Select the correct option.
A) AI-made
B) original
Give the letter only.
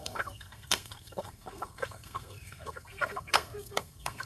A